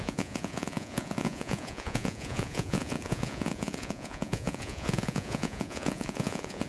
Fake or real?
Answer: fake